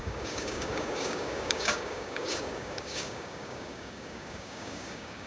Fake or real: fake